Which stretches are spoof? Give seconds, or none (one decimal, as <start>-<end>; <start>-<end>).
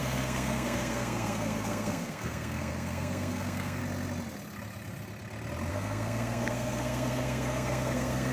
0.0-3.8; 5.7-8.3